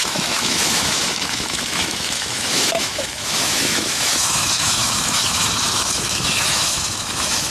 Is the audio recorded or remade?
remade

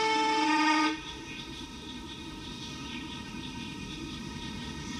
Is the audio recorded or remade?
remade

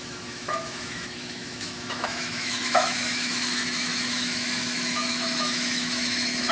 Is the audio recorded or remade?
remade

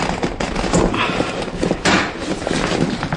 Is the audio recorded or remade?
recorded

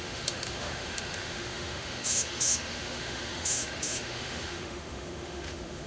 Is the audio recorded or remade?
remade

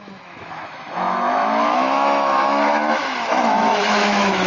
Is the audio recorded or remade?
remade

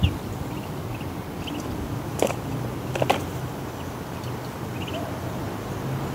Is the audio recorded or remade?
recorded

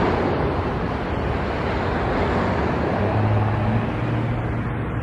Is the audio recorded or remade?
recorded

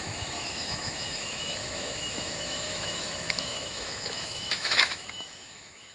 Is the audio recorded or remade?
remade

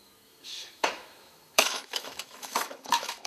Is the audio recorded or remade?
remade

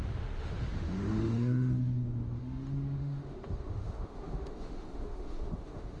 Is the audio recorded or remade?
remade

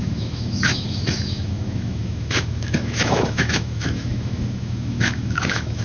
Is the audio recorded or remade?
remade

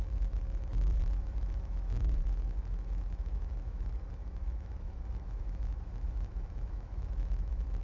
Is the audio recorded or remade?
remade